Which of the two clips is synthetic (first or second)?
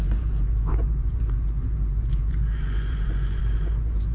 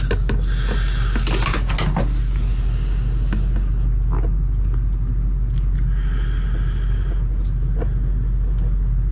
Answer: first